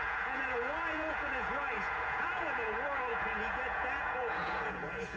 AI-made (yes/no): yes